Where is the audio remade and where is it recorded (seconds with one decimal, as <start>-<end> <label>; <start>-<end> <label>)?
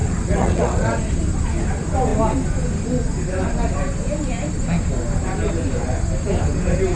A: 0.0-1.0 remade; 1.0-7.0 recorded